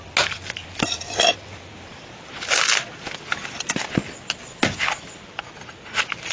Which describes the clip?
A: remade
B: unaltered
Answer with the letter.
B